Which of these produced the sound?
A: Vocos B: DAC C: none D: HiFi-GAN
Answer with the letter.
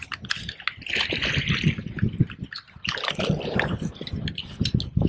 C